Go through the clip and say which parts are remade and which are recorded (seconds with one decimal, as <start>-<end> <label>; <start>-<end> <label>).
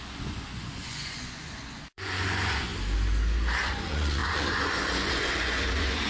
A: 0.0-2.7 remade; 2.7-3.6 recorded; 3.6-6.1 remade